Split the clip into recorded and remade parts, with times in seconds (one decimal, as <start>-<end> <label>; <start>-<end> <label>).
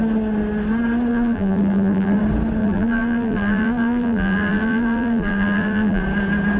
0.0-1.1 recorded; 1.1-2.2 remade; 2.2-2.6 recorded; 2.6-6.0 remade; 6.0-6.6 recorded